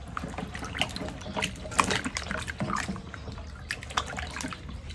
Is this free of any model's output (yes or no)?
yes